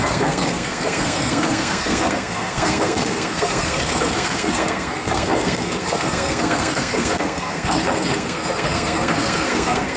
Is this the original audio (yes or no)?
no